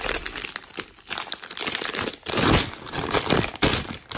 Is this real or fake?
fake